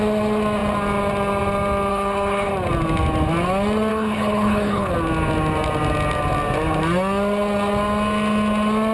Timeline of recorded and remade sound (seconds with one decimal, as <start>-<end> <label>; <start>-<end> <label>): 0.0-1.9 recorded; 1.9-2.5 remade; 2.5-3.9 recorded; 3.9-4.9 remade; 4.9-8.9 recorded